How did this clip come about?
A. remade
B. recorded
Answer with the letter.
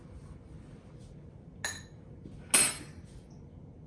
B